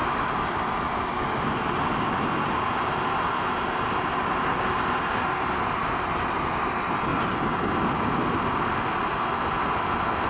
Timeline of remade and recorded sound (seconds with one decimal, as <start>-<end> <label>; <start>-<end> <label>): 0.0-10.3 recorded